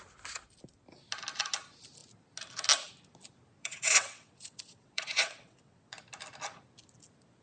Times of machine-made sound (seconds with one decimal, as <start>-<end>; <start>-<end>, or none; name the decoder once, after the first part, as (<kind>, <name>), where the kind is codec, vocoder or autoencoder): 3.6-6.0 (vocoder, WaveNeXt)